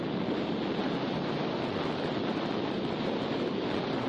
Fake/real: real